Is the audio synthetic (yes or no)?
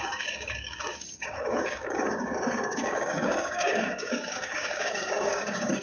yes